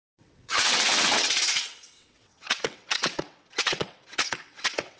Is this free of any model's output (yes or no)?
no